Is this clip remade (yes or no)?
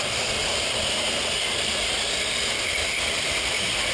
no